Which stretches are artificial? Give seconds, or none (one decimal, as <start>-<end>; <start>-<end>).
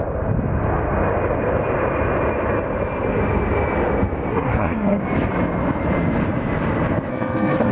4.3-5.0; 7.1-7.7